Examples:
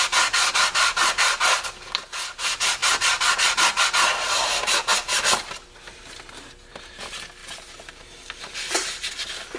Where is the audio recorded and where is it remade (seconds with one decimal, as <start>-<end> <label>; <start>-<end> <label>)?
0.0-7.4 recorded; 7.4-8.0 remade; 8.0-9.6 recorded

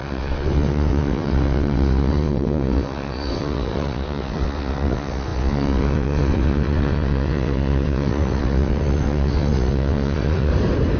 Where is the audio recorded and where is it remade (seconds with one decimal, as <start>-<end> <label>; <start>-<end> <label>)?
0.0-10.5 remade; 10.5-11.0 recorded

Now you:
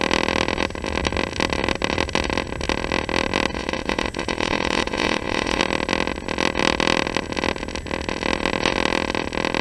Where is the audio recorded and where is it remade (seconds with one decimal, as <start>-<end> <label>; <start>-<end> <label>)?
0.0-3.5 recorded; 3.5-5.6 remade; 5.6-9.6 recorded